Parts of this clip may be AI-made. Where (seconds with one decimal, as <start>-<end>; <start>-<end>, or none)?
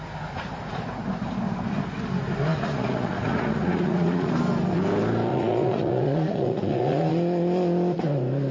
2.5-4.3; 5.3-7.1